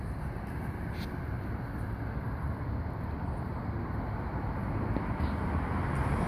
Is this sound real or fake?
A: real